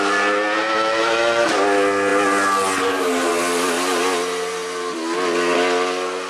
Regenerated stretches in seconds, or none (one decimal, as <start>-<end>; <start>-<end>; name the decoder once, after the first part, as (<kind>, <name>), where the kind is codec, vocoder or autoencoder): 0.6-1.5 (autoencoder, DAC-VAE)